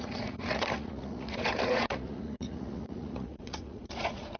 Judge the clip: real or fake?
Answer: fake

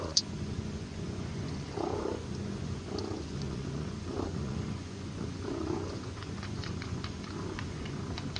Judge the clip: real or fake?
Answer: fake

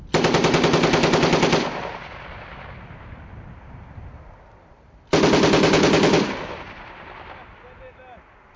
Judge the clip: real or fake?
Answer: real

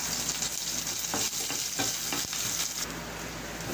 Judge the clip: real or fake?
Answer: real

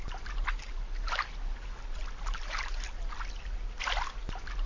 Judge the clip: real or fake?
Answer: real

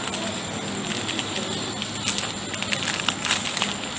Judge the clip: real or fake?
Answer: real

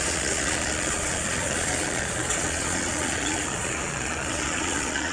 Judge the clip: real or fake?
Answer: fake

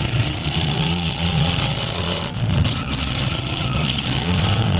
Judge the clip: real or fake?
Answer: fake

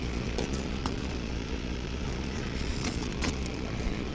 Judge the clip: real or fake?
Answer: fake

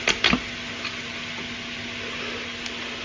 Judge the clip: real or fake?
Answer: real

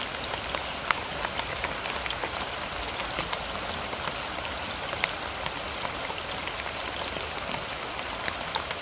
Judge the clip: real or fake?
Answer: real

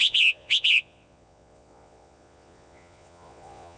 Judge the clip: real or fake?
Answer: fake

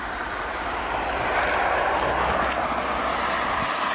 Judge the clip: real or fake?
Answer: real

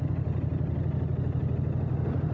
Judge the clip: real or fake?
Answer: real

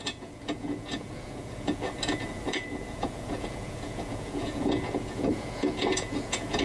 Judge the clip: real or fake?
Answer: fake